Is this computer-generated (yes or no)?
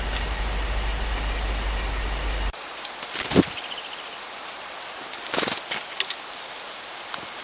no